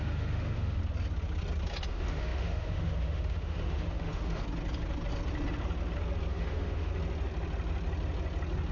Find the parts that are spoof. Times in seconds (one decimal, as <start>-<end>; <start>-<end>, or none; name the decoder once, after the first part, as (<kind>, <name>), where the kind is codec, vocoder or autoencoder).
0.0-0.8 (autoencoder, DAC-VAE); 1.9-4.4; 6.3-6.9